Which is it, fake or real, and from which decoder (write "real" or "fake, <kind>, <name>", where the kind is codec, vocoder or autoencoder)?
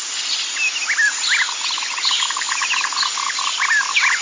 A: real